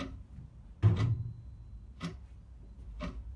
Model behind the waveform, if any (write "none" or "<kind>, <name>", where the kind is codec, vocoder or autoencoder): none